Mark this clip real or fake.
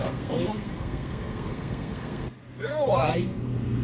fake